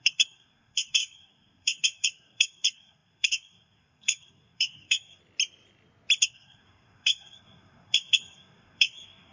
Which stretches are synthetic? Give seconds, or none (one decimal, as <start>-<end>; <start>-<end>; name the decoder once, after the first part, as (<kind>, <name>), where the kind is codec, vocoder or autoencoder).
0.0-5.2 (codec, SNAC); 6.2-9.3